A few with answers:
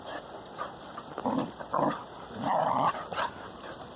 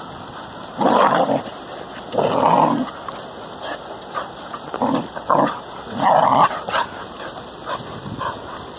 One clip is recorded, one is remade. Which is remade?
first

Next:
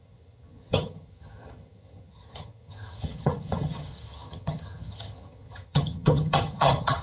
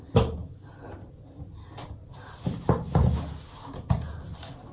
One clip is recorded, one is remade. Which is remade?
first